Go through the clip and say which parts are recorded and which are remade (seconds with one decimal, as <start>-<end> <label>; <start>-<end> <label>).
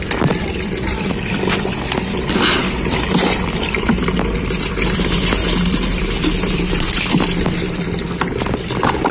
0.0-2.6 remade; 2.6-3.1 recorded; 3.1-9.1 remade